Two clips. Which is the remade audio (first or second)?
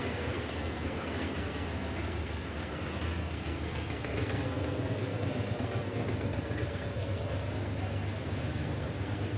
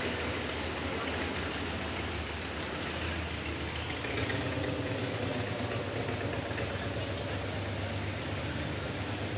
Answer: first